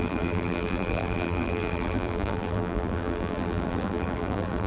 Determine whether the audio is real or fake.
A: fake